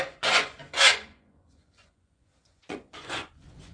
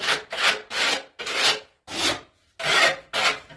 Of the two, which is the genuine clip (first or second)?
second